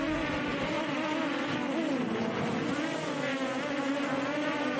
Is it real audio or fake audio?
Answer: real